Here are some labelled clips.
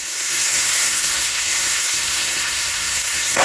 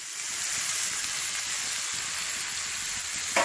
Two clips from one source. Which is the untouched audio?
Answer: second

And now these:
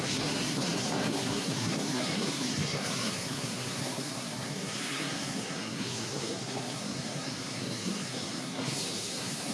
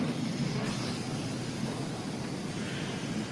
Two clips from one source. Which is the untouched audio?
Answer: second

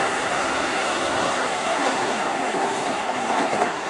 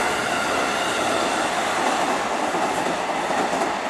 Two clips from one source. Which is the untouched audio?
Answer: second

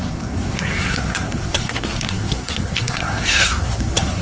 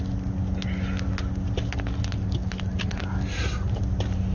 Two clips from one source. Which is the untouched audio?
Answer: second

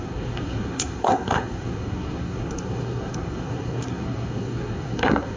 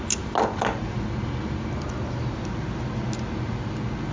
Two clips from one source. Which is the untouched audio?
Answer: second